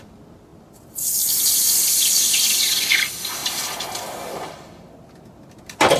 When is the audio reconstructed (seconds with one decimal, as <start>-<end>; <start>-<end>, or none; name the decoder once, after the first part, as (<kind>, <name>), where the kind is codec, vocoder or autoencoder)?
none